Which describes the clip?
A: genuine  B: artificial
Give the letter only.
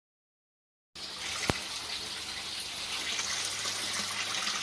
A